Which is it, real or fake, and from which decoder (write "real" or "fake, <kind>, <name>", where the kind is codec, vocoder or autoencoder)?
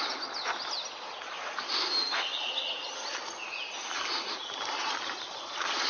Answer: real